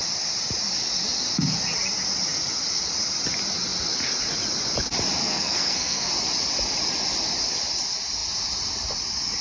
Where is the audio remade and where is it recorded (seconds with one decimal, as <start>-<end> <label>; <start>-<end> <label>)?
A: 0.0-5.2 recorded; 5.2-6.1 remade; 6.1-9.4 recorded